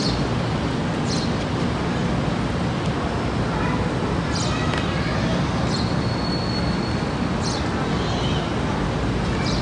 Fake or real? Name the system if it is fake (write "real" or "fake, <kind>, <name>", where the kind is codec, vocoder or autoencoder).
real